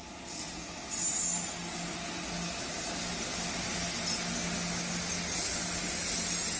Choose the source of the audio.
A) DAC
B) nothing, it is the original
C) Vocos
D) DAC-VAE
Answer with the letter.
B